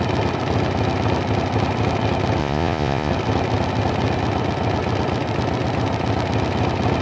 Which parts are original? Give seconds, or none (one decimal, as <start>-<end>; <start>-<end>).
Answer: 0.0-2.4; 3.1-7.0